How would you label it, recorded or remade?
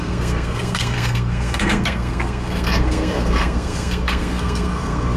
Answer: remade